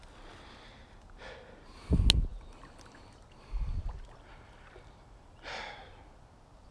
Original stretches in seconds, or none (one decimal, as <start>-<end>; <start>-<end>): 0.0-6.7